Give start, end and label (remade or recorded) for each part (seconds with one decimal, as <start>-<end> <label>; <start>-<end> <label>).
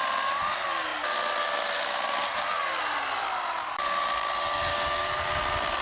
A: 0.0-4.7 recorded; 4.7-5.3 remade; 5.3-5.8 recorded